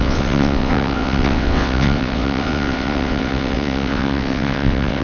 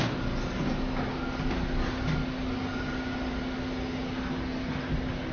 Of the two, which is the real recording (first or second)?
second